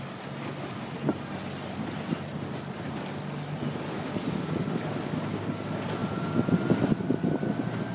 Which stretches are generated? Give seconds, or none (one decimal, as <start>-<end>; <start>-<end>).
none